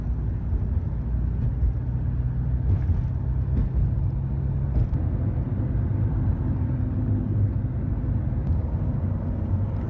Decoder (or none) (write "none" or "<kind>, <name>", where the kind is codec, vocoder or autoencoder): none